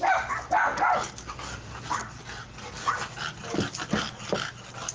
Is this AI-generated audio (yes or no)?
no